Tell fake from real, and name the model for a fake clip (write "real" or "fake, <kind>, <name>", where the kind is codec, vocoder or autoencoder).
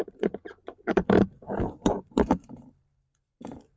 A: fake, vocoder, BigVGAN v2